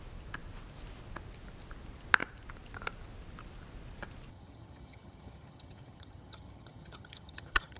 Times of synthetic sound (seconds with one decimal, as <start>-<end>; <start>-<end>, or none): 4.3-7.8